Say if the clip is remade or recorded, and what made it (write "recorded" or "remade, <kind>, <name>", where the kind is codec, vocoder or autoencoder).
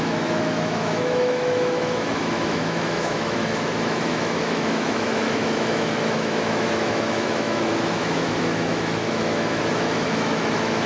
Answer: remade, autoencoder, DAC-VAE